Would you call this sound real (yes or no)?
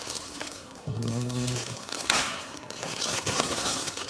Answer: no